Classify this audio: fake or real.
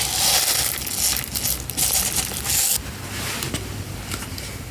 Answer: real